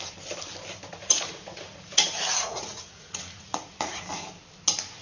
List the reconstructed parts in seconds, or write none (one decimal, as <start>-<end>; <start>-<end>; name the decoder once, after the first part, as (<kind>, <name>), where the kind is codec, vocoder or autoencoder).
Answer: 1.0-4.0 (vocoder, Vocos)